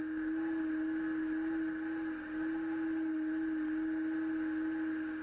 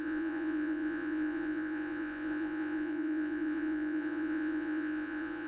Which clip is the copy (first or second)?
second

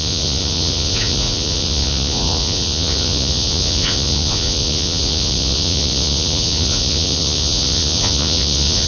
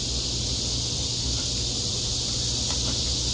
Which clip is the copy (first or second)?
first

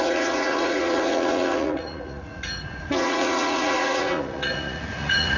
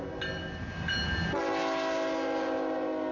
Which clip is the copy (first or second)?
first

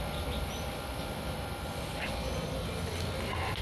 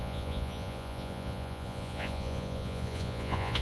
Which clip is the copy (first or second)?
second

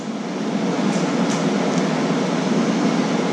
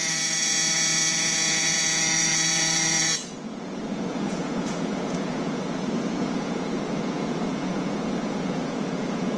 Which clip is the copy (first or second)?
second